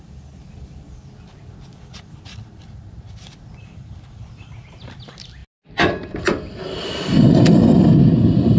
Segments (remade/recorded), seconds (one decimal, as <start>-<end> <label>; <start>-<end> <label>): 0.0-5.4 remade; 5.4-6.5 recorded; 6.5-8.6 remade